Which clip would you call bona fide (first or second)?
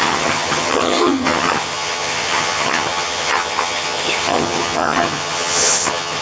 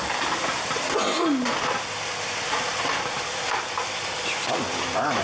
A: second